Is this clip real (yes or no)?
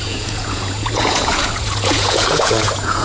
no